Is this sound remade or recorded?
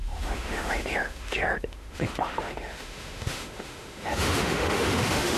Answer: remade